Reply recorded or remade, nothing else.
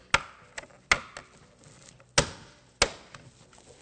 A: recorded